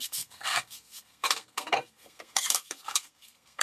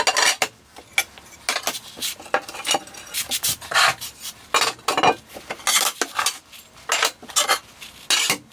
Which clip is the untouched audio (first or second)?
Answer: second